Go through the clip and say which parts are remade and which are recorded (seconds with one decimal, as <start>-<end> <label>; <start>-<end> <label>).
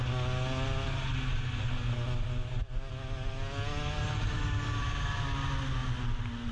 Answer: 0.0-6.5 recorded